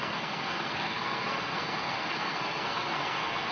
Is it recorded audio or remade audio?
remade